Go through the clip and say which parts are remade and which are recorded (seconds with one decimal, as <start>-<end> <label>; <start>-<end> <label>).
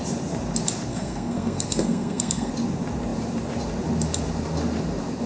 0.0-0.9 recorded; 0.9-2.5 remade; 2.5-5.3 recorded